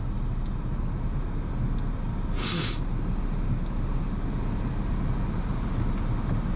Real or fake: real